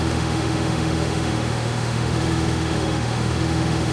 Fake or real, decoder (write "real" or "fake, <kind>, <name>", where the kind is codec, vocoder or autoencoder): fake, autoencoder, DAC-VAE